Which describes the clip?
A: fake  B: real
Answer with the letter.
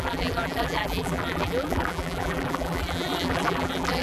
A